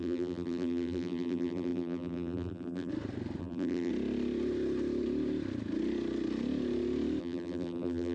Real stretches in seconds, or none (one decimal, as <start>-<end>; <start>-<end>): 2.9-3.4; 3.9-7.2